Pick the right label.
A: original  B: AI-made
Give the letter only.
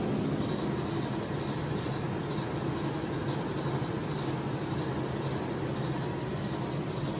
A